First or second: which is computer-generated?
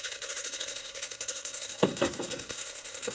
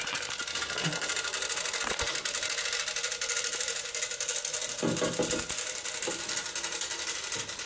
first